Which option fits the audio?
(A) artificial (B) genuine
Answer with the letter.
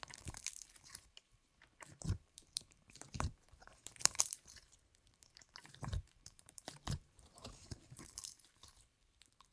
A